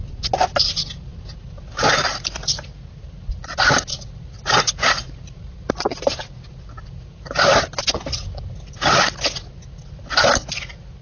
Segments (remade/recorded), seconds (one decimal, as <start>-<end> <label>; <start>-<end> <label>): 0.0-11.0 recorded

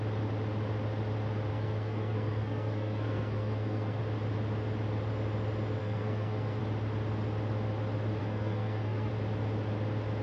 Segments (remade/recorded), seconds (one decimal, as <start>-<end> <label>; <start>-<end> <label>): 0.0-1.5 recorded; 1.5-4.0 remade; 4.0-5.8 recorded; 5.8-6.6 remade; 6.6-8.2 recorded; 8.2-9.1 remade; 9.1-10.2 recorded

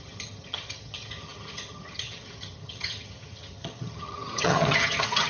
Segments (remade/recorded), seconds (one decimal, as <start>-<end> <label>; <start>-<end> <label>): 0.0-5.3 remade

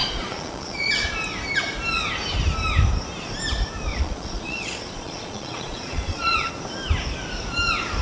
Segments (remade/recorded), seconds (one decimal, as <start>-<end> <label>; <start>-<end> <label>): 0.0-0.9 remade; 0.9-3.9 recorded; 3.9-6.5 remade; 6.5-8.0 recorded

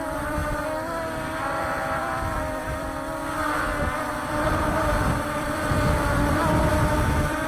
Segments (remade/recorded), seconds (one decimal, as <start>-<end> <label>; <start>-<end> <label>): 0.0-0.4 remade; 0.4-1.6 recorded; 1.6-7.5 remade